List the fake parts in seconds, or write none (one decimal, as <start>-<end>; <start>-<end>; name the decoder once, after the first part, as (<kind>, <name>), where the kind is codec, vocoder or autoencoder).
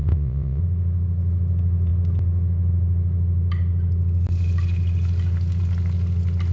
0.0-0.6 (vocoder, Vocos)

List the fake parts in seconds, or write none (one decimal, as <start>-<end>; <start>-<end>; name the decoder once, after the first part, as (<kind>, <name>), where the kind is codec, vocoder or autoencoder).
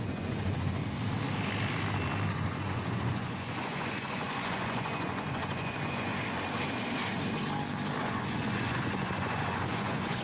0.0-0.8 (vocoder, Vocos); 2.3-6.1; 8.0-10.2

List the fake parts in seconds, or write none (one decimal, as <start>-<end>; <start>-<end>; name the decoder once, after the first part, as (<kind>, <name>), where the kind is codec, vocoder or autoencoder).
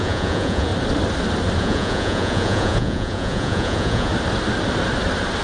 0.0-0.7 (vocoder, Vocos); 1.6-4.1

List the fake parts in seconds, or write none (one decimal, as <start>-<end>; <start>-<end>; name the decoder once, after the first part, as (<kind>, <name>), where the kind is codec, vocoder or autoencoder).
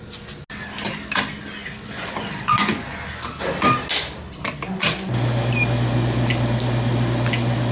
1.6-3.1 (vocoder, Vocos)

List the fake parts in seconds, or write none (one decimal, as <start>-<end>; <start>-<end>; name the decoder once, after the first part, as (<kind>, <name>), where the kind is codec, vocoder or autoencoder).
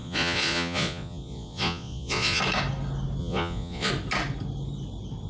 0.0-2.4 (vocoder, Vocos); 3.2-3.9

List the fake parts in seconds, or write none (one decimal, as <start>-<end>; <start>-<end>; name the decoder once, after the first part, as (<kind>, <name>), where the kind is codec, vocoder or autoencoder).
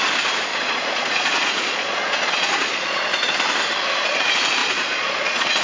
0.5-3.3 (vocoder, Vocos); 4.6-5.6